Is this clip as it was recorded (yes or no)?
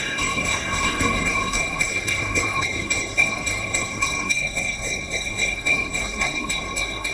no